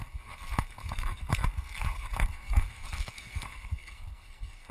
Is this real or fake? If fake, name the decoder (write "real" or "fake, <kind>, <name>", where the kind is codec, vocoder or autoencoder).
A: fake, codec, SNAC